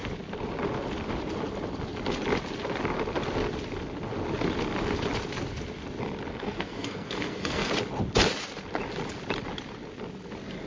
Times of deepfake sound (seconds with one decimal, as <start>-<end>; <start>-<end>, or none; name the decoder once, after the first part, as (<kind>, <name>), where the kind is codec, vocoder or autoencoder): 6.3-7.7 (codec, SNAC)